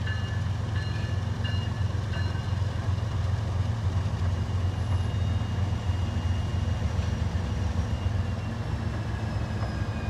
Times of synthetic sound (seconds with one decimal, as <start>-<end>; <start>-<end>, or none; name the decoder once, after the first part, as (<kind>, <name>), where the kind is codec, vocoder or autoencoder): none